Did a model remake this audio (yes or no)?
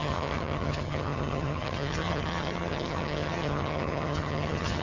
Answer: yes